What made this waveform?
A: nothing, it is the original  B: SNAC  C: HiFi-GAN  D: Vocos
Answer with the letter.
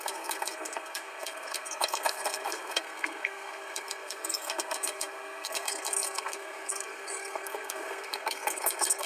B